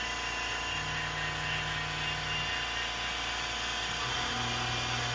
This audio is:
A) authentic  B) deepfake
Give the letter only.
A